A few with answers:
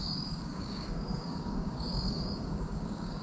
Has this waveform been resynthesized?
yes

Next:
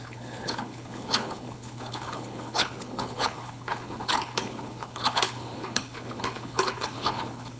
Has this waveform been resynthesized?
yes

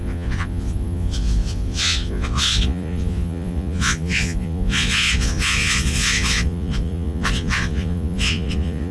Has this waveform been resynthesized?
yes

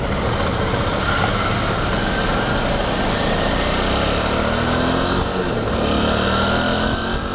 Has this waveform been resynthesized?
no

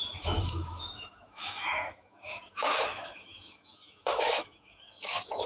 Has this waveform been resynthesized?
yes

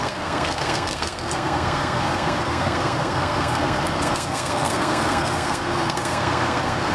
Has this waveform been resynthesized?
yes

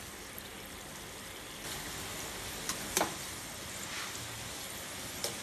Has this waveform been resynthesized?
no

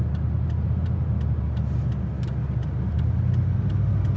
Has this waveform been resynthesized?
no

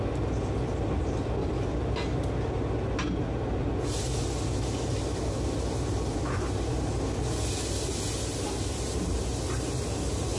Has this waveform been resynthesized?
no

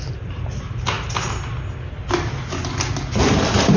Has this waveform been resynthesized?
no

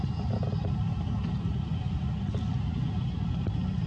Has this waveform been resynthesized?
no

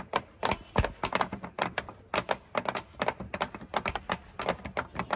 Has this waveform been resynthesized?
no